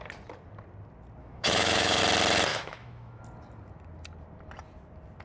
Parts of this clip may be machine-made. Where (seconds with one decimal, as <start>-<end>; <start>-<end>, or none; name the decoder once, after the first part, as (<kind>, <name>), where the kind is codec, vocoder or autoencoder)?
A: 1.2-2.0 (autoencoder, DAC-VAE); 2.5-3.2